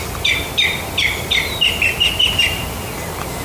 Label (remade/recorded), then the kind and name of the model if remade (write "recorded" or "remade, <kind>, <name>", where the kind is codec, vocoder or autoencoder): recorded